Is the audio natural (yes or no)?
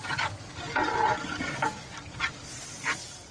yes